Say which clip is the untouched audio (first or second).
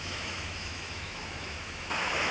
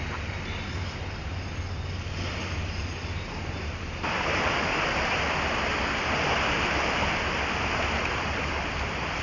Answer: second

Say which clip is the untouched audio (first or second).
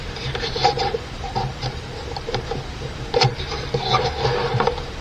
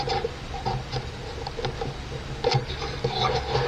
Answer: second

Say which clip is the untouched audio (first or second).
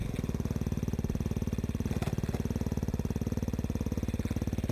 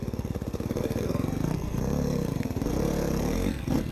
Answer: first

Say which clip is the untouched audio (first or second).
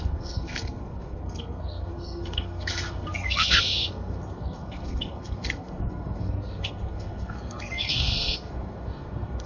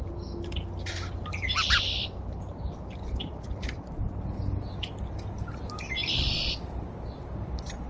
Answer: second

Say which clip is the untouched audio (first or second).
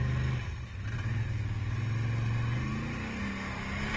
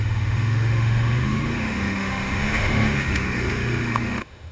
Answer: first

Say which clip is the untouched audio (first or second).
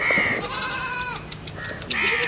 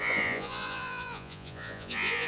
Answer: first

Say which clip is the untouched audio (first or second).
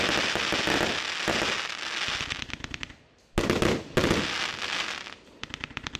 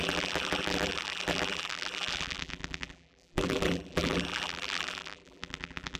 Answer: first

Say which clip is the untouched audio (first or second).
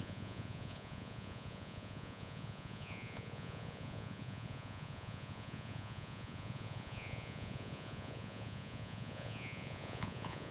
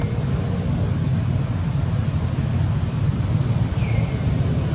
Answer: second